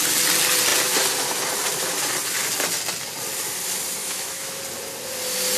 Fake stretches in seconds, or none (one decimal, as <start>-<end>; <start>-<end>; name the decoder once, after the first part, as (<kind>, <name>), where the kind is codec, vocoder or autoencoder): 4.0-4.6 (autoencoder, DAC-VAE)